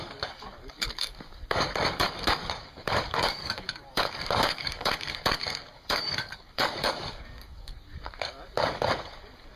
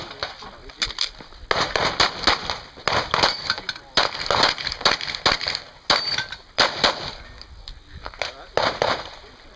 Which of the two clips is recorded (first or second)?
second